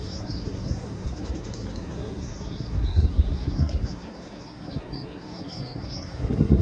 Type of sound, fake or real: fake